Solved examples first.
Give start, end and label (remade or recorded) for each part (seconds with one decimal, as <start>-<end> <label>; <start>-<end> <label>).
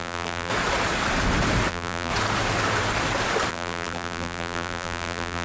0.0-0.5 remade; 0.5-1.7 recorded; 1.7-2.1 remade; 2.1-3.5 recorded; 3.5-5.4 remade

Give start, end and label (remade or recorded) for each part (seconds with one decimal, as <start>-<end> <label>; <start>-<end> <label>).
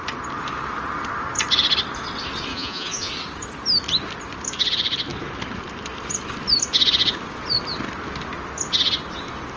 0.0-2.5 recorded; 2.5-3.1 remade; 3.1-9.6 recorded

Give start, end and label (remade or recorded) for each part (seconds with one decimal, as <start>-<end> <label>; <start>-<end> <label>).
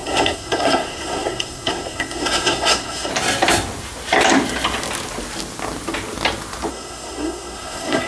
0.0-3.1 remade; 3.1-6.7 recorded; 6.7-8.1 remade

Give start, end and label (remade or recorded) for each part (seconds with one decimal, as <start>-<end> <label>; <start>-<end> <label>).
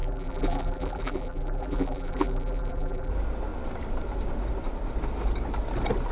0.0-3.1 remade; 3.1-6.1 recorded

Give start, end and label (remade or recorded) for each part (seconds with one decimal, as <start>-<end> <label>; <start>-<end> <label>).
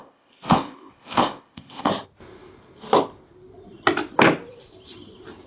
0.0-1.9 remade; 1.9-5.5 recorded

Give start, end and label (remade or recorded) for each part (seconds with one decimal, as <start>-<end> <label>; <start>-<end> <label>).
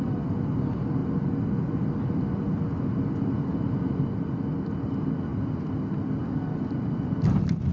0.0-7.7 recorded